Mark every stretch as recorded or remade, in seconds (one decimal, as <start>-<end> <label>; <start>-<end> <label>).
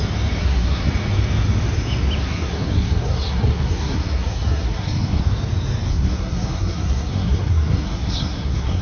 0.0-0.4 recorded; 0.4-0.9 remade; 0.9-2.2 recorded; 2.2-5.2 remade; 5.2-5.9 recorded; 5.9-8.8 remade